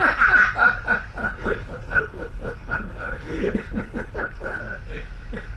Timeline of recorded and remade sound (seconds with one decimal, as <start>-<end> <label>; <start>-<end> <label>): 0.0-1.2 recorded; 1.2-4.6 remade; 4.6-5.6 recorded